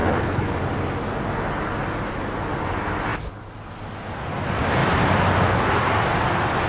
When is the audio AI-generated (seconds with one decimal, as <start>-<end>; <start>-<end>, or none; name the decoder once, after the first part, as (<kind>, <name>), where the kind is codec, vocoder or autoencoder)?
0.0-0.6 (codec, HILCodec)